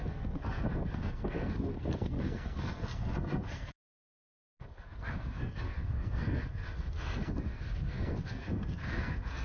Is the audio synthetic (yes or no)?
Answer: yes